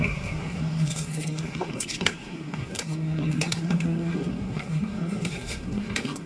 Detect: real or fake fake